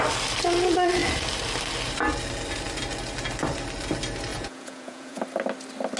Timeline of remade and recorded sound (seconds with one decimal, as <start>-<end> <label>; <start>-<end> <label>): 0.0-4.3 recorded; 4.3-5.2 remade; 5.2-6.0 recorded